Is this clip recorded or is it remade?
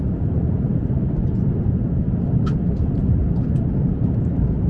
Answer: remade